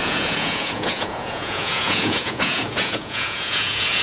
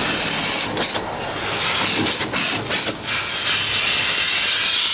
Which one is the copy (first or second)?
first